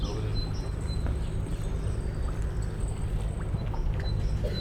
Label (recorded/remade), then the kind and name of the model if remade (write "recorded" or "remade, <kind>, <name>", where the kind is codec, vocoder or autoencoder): recorded